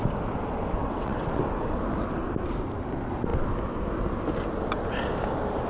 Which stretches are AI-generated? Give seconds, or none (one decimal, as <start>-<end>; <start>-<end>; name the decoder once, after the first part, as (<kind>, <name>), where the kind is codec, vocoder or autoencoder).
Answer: 0.8-1.4 (vocoder, WaveNeXt)